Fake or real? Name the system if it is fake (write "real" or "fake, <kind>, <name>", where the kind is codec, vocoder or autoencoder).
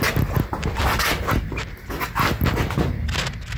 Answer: real